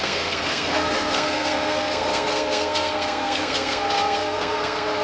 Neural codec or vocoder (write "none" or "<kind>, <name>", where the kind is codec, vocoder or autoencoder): codec, SNAC